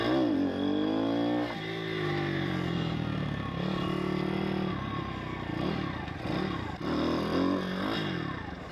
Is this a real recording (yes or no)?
yes